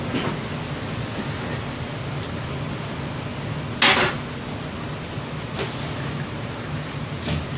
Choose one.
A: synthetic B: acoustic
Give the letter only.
B